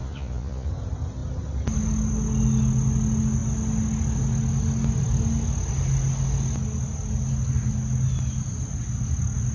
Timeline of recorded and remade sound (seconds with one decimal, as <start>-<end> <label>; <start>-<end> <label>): 0.0-0.7 remade; 0.7-9.5 recorded